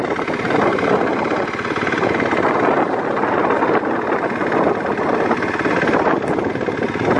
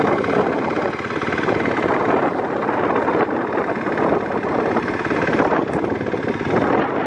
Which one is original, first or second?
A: first